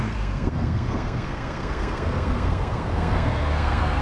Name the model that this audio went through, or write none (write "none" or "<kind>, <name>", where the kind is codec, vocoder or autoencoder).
codec, SNAC